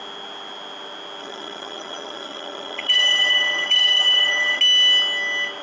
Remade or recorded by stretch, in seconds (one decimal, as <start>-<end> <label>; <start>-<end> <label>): 0.0-1.2 recorded; 1.2-4.6 remade; 4.6-5.6 recorded